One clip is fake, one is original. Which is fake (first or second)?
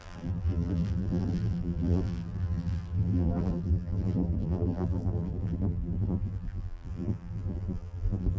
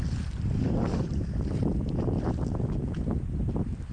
first